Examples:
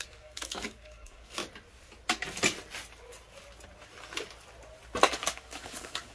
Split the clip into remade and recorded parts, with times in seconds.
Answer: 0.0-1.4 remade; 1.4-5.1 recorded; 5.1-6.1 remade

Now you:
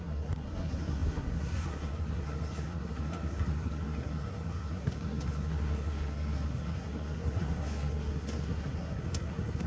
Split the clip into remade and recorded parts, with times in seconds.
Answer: 0.0-9.7 remade

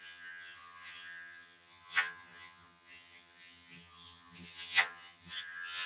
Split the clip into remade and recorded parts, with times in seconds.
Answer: 0.0-5.9 remade

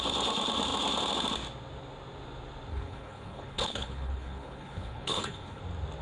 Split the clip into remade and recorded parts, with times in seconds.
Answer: 0.0-2.7 recorded; 2.7-5.6 remade; 5.6-6.0 recorded

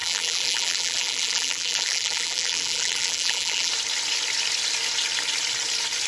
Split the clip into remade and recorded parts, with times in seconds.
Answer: 0.0-3.7 remade; 3.7-6.1 recorded

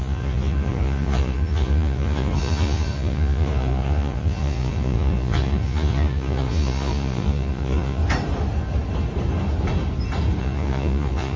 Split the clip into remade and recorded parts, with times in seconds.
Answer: 0.0-8.0 remade; 8.0-10.4 recorded; 10.4-11.4 remade

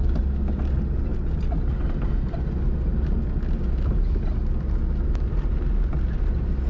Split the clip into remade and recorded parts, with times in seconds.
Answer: 0.0-6.7 recorded